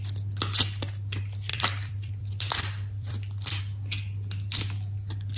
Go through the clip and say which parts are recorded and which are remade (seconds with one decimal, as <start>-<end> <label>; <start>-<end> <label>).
0.0-1.5 recorded; 1.5-3.6 remade; 3.6-5.4 recorded